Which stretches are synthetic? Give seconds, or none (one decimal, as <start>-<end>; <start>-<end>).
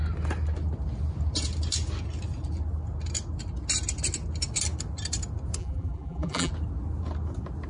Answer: 5.6-6.5